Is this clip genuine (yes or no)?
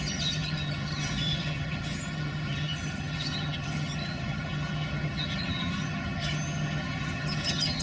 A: no